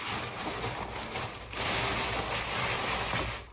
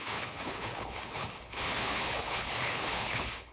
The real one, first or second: first